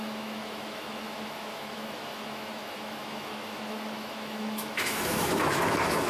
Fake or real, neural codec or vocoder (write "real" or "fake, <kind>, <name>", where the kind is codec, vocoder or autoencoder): fake, autoencoder, DAC-VAE